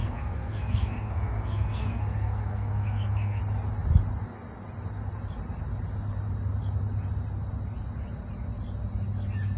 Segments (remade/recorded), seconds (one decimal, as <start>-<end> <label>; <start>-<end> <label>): 0.0-3.4 remade; 3.4-9.6 recorded